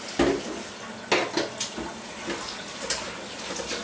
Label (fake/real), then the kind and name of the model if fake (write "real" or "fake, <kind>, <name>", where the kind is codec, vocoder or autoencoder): real